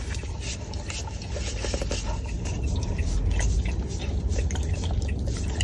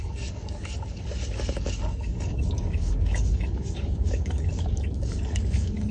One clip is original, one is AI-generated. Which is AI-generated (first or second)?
second